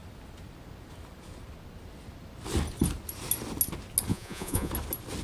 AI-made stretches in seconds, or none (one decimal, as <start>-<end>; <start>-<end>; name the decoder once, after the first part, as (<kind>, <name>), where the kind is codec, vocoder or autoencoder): 4.1-4.7 (vocoder, Vocos)